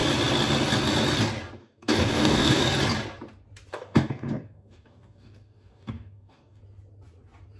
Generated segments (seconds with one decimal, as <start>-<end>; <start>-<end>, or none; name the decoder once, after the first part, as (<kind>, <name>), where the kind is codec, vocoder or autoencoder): 1.6-2.6 (codec, DAC); 3.7-6.6